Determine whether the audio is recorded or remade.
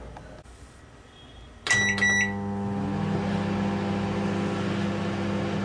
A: recorded